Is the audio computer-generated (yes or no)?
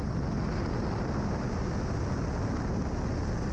no